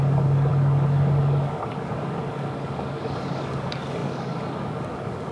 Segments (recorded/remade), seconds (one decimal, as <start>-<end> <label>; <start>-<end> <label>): 0.0-5.3 remade